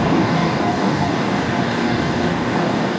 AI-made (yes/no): yes